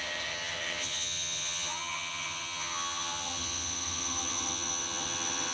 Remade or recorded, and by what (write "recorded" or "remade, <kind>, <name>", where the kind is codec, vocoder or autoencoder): remade, vocoder, HiFi-GAN